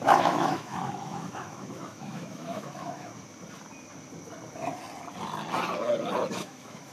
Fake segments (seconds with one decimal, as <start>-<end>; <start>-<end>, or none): 0.0-3.1; 6.3-6.9